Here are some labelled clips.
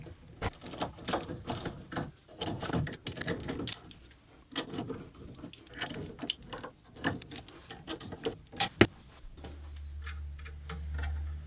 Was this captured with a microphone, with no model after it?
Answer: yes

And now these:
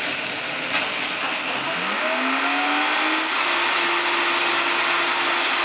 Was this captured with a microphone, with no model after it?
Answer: yes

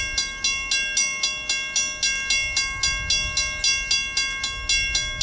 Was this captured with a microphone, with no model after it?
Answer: yes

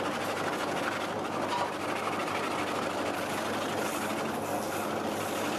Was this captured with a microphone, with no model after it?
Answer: yes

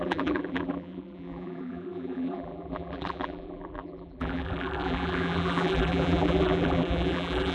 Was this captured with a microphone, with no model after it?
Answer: no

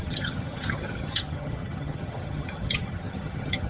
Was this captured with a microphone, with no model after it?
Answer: no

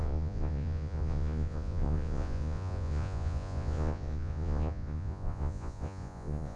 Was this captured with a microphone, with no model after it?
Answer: no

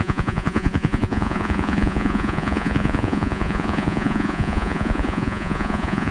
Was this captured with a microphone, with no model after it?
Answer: no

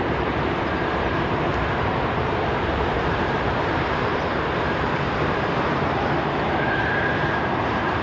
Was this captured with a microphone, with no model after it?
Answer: no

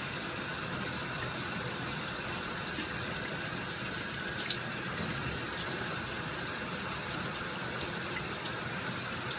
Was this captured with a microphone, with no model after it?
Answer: yes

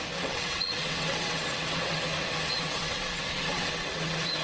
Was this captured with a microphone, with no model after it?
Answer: no